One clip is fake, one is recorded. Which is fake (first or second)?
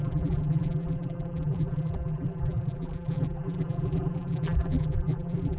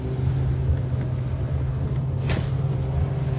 first